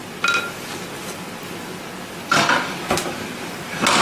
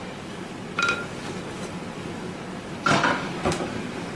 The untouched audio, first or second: first